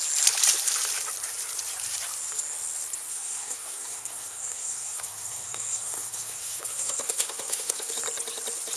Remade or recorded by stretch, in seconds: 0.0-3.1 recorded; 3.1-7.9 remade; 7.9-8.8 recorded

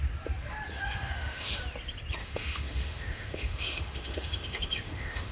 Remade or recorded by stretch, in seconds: 0.0-0.7 recorded; 0.7-1.6 remade; 1.6-2.2 recorded; 2.2-5.3 remade

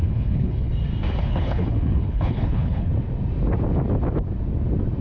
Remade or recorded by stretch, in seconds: 0.0-0.7 remade; 0.7-1.2 recorded; 1.2-2.9 remade; 2.9-5.0 recorded